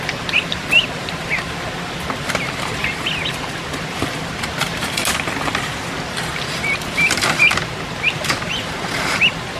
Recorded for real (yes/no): yes